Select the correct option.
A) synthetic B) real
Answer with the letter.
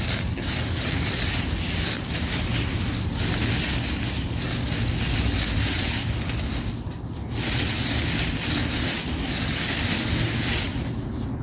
B